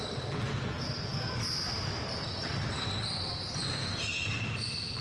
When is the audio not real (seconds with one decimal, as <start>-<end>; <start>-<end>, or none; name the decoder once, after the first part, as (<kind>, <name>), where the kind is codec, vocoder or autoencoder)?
none